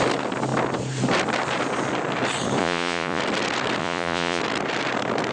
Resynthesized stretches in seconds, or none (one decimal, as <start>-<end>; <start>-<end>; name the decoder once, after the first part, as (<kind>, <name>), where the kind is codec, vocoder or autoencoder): 2.6-3.2 (vocoder, Vocos); 3.8-4.4